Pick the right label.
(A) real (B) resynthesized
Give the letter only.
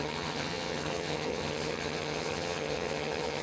B